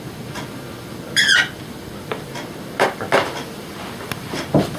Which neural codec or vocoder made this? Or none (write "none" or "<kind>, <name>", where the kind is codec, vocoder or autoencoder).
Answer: none